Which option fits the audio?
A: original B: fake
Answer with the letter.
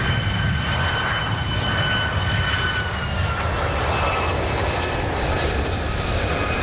A